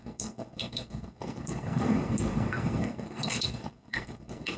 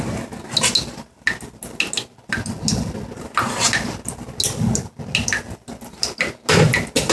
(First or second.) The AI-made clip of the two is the first